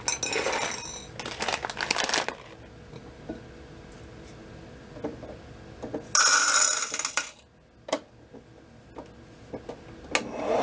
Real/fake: real